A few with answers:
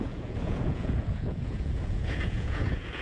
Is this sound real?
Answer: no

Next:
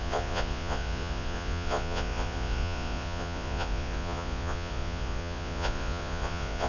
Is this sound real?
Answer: no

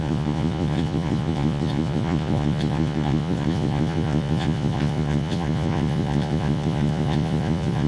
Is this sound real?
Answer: no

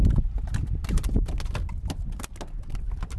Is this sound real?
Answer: yes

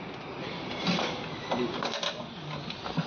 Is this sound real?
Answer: yes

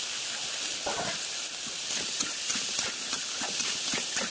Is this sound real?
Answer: yes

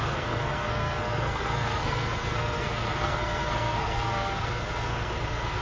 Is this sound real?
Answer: no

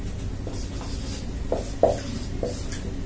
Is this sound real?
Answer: yes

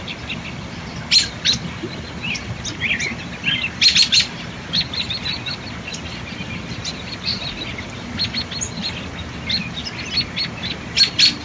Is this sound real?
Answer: yes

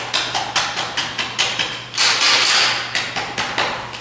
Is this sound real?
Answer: yes